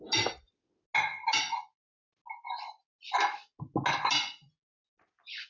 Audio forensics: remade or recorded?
recorded